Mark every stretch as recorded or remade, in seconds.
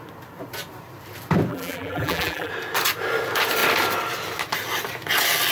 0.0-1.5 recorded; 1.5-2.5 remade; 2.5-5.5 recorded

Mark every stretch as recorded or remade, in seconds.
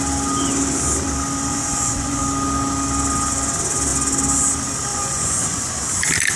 0.0-1.5 recorded; 1.5-2.2 remade; 2.2-4.9 recorded; 4.9-5.8 remade; 5.8-6.4 recorded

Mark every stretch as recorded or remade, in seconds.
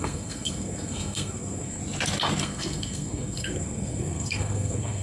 0.0-1.8 remade; 1.8-2.4 recorded; 2.4-5.0 remade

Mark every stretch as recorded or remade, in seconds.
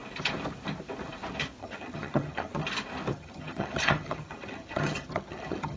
0.0-1.6 recorded; 1.6-2.6 remade; 2.6-3.1 recorded; 3.1-5.8 remade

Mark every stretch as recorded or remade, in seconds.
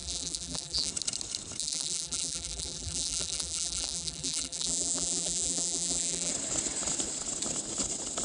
0.0-0.9 remade; 0.9-1.6 recorded; 1.6-6.3 remade; 6.3-8.2 recorded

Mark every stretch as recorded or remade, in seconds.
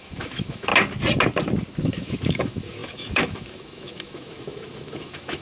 0.0-0.7 remade; 0.7-1.8 recorded; 1.8-5.4 remade